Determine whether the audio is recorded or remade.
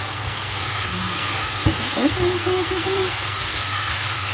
remade